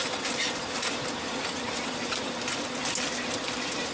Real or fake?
real